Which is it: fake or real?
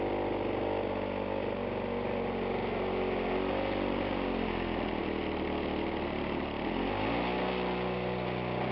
real